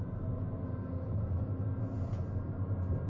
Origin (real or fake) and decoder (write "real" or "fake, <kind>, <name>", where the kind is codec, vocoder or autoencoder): real